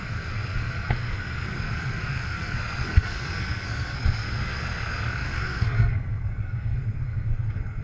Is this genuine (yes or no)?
no